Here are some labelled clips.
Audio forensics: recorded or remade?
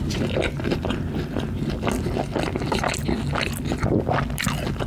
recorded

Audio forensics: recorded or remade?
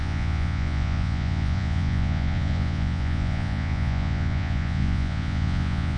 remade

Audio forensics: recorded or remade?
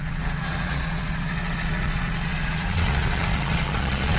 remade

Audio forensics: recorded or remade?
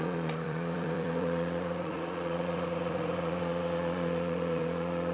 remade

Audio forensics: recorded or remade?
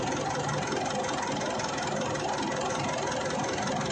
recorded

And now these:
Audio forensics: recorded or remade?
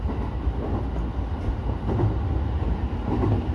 recorded